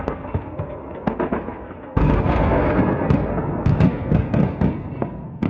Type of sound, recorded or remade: remade